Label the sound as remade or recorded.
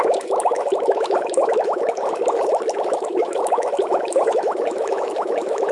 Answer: remade